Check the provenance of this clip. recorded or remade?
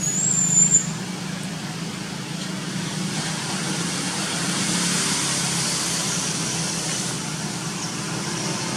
remade